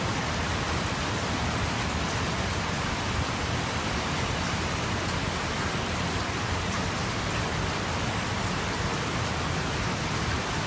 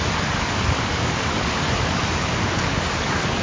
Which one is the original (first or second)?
first